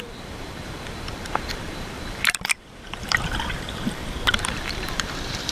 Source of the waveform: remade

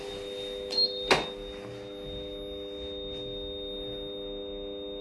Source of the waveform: recorded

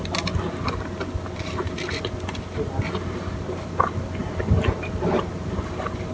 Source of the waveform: recorded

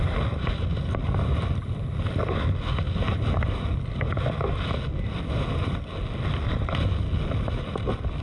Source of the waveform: recorded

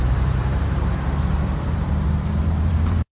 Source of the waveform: remade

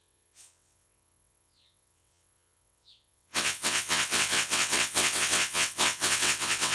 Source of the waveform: remade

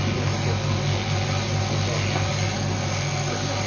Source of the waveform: recorded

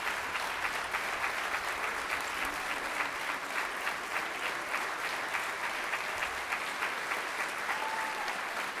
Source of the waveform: recorded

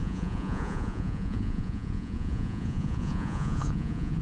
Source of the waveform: remade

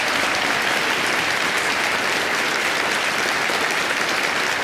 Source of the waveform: recorded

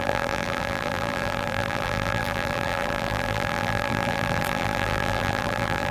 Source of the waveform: remade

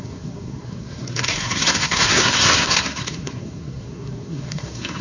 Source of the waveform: remade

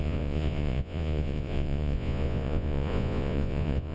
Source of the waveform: remade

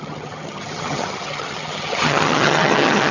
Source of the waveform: remade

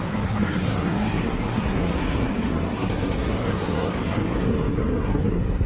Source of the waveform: remade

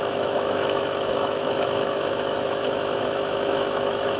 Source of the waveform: remade